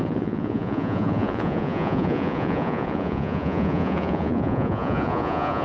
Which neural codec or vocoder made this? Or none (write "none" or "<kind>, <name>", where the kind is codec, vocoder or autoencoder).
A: vocoder, Vocos